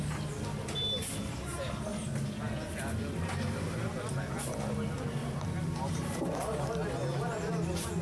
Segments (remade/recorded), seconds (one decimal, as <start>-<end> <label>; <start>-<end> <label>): 0.0-5.2 recorded; 5.2-6.2 remade; 6.2-8.0 recorded